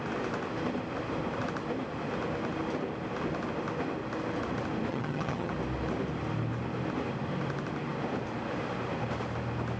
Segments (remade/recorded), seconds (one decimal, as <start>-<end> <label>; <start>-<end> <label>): 0.0-4.9 recorded; 4.9-5.5 remade; 5.5-9.8 recorded